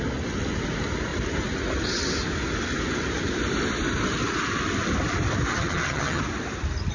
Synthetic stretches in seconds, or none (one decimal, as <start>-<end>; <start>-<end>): 5.5-6.2

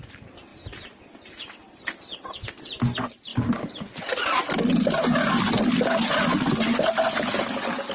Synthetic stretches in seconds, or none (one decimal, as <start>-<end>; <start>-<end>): none

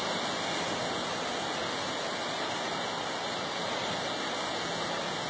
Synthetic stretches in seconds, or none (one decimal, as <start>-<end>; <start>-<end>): none

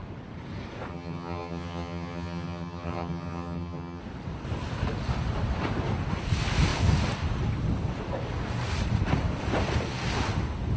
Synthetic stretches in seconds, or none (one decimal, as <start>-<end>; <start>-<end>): 0.9-4.0

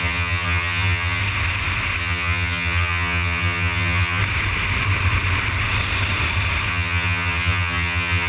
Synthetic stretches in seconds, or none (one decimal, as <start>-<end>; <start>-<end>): 0.0-1.2; 2.0-4.2; 6.7-8.3